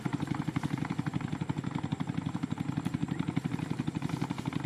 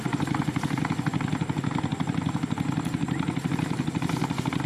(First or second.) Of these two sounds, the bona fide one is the second